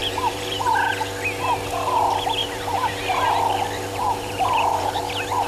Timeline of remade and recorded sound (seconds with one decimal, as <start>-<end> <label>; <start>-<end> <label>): 0.0-0.9 remade; 0.9-2.4 recorded; 2.4-3.0 remade; 3.0-4.0 recorded; 4.0-5.0 remade; 5.0-5.5 recorded